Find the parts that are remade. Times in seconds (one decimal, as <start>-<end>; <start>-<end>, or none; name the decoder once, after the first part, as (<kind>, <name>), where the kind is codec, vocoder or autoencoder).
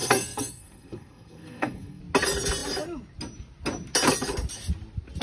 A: 0.0-2.0 (codec, SNAC)